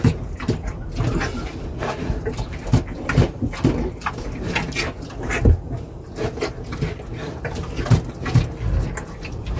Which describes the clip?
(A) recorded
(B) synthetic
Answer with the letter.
A